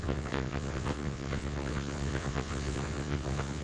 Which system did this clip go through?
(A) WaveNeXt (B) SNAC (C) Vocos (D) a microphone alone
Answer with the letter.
A